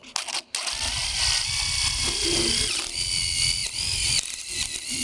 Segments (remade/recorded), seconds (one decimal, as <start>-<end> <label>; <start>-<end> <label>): 0.0-3.6 recorded; 3.6-4.4 remade; 4.4-5.0 recorded